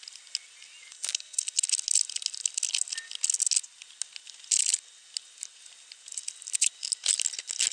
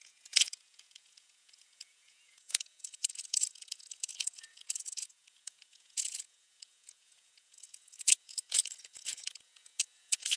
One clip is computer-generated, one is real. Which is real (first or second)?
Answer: first